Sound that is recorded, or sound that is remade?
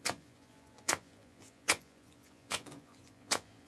remade